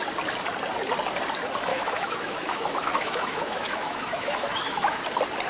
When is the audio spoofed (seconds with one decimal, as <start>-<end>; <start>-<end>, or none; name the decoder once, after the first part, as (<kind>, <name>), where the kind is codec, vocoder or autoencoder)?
1.7-5.0 (autoencoder, DAC-VAE)